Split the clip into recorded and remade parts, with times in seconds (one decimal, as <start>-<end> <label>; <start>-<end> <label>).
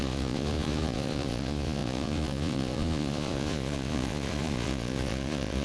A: 0.0-5.6 remade